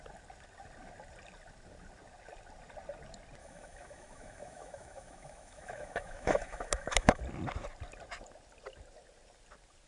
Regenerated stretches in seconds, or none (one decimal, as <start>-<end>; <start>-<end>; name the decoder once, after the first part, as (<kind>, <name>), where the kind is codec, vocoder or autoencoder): 3.4-7.2 (autoencoder, DAC-VAE)